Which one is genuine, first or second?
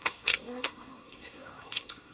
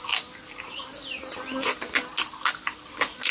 second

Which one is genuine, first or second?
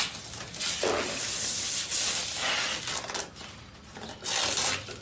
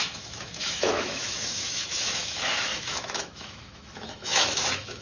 first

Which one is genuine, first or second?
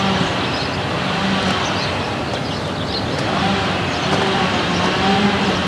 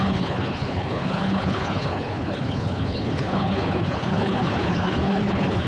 first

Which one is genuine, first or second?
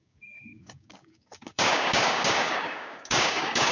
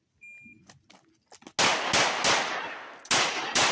second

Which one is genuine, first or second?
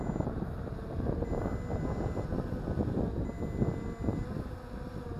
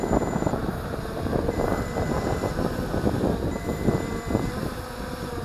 first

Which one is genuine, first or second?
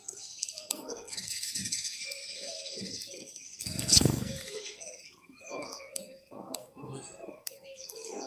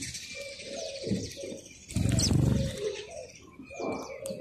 second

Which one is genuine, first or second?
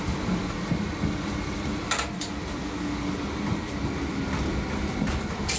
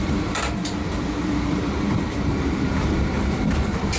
first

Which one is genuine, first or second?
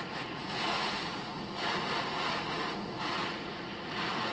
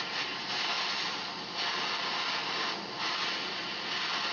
second